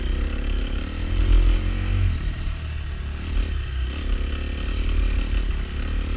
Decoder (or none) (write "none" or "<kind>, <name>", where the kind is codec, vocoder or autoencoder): none